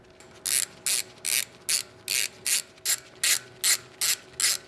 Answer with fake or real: real